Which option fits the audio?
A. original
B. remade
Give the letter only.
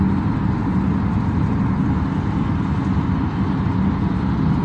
A